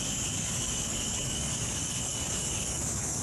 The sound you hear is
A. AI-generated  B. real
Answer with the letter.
A